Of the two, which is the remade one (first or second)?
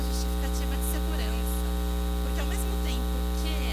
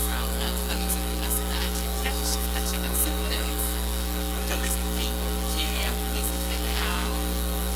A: second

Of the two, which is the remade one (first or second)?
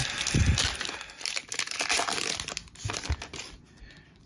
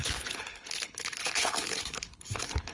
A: second